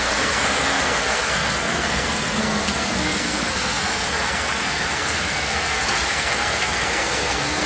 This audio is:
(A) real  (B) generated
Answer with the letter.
B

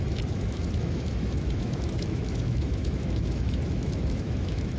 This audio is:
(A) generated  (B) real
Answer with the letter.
A